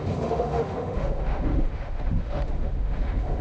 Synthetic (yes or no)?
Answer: yes